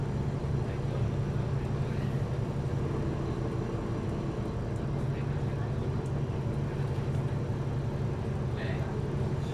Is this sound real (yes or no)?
yes